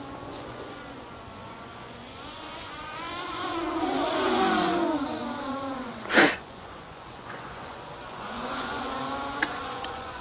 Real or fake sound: fake